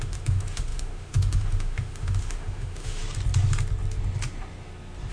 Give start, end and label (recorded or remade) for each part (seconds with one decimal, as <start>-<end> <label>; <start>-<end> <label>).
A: 0.0-3.0 remade; 3.0-5.1 recorded